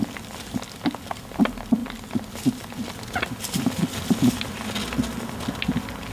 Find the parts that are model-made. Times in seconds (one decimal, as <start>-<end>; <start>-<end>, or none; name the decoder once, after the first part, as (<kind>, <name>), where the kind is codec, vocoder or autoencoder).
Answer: none